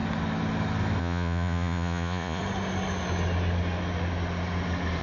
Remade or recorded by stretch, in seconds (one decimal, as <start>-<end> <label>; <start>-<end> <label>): 0.0-1.0 recorded; 1.0-2.4 remade; 2.4-5.0 recorded